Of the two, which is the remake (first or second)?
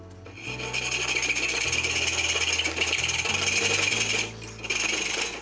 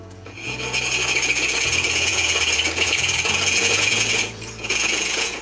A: second